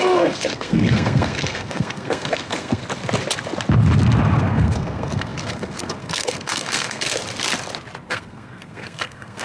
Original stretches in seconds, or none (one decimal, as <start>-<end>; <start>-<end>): 2.8-4.4; 7.2-8.1